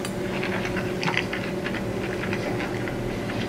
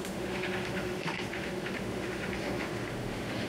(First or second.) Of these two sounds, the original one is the first